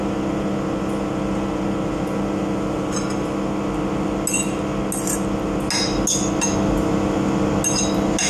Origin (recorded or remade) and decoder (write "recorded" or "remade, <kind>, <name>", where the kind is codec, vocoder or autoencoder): recorded